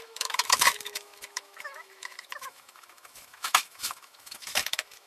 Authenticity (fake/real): fake